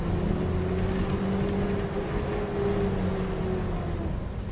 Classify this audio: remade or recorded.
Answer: recorded